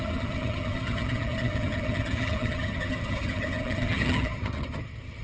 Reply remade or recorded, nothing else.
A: remade